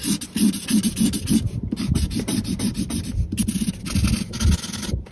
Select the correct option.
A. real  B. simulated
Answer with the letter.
A